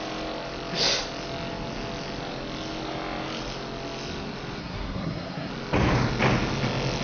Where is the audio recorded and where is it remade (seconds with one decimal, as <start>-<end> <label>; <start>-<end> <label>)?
0.0-4.6 recorded; 4.6-5.5 remade; 5.5-7.0 recorded